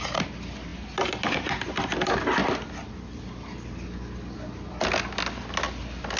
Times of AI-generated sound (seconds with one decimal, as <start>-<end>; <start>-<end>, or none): none